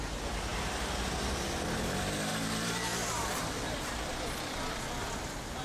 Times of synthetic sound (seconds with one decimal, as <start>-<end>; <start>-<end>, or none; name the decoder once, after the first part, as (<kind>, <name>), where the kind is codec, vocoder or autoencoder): 2.3-3.8 (vocoder, BigVGAN v2)